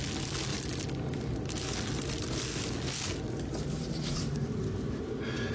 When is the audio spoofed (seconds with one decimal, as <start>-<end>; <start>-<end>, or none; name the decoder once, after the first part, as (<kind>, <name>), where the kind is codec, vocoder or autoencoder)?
0.5-1.4 (vocoder, BigVGAN v2)

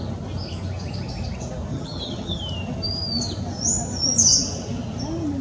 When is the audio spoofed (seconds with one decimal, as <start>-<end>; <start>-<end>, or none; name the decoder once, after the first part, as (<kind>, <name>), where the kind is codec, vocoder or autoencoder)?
1.7-2.4 (vocoder, HiFi-GAN)

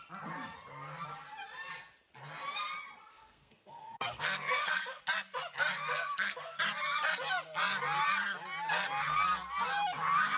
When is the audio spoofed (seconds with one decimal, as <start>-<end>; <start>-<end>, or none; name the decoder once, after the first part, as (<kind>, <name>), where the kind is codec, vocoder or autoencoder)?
3.1-5.0 (codec, SNAC); 5.9-6.6

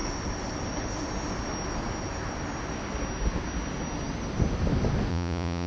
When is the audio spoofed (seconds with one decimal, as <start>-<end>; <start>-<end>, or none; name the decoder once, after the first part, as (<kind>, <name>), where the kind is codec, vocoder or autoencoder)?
5.1-5.7 (vocoder, Vocos)

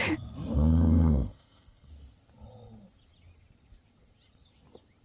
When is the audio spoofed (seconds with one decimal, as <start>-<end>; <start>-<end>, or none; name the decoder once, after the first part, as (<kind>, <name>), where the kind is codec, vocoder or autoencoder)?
0.7-1.9 (codec, SNAC)

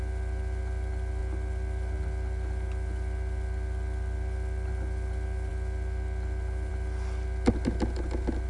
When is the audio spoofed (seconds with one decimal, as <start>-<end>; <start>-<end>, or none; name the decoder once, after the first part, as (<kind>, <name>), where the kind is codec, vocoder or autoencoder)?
none

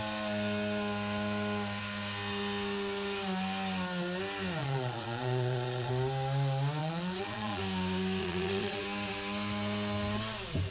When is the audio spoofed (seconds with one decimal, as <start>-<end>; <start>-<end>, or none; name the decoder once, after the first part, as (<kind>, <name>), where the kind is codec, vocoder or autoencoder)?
4.6-5.9 (vocoder, Vocos); 6.8-7.6; 8.2-8.8